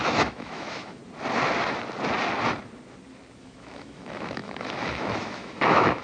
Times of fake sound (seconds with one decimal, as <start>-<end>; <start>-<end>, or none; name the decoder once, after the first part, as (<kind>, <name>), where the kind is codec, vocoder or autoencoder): 0.0-1.0 (autoencoder, DAC-VAE); 3.4-6.0